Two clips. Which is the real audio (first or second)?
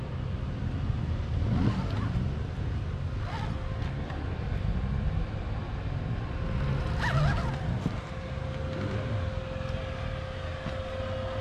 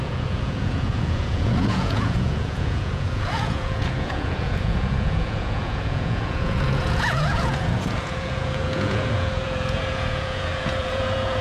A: first